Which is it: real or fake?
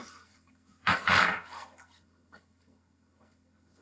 fake